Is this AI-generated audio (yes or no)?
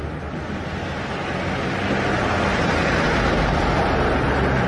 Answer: no